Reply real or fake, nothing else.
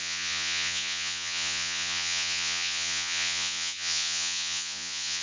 fake